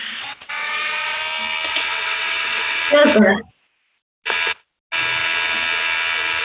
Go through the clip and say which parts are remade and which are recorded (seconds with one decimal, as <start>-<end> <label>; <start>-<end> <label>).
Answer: 0.0-1.2 remade; 1.2-1.7 recorded; 1.7-2.8 remade; 2.8-6.4 recorded